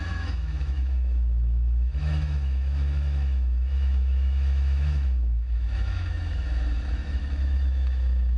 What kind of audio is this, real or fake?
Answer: fake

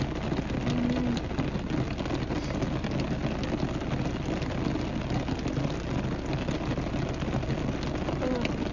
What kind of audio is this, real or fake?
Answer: real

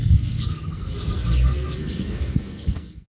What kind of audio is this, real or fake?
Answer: fake